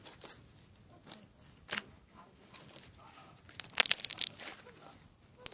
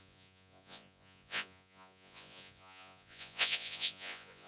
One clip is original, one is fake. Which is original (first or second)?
first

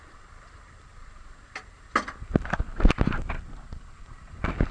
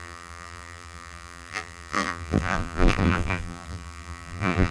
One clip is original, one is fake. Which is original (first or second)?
first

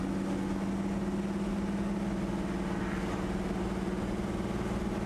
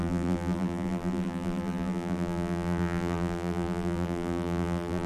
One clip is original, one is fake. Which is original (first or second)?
first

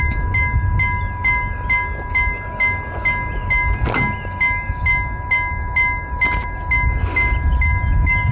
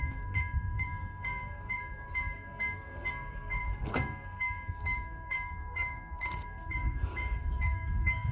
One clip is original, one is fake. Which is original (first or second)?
first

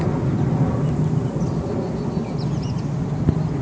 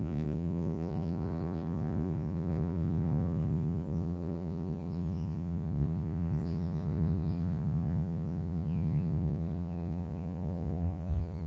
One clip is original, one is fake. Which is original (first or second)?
first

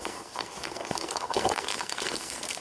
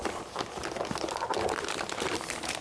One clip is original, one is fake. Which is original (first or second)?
second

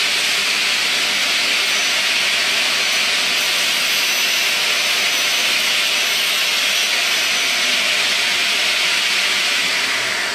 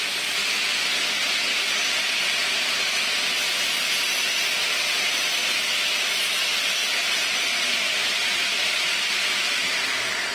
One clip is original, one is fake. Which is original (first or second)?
first